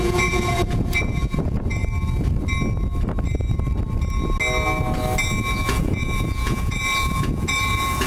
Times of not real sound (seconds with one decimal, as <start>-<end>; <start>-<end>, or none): 0.0-1.8; 5.4-8.1